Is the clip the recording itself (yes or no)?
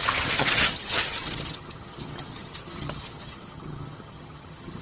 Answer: no